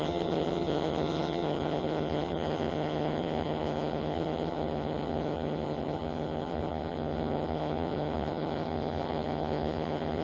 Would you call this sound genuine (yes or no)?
no